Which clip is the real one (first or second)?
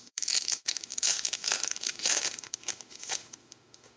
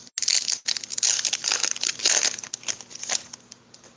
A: second